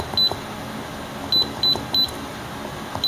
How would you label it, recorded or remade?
recorded